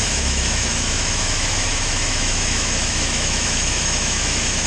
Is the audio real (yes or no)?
no